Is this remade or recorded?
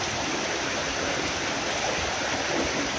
recorded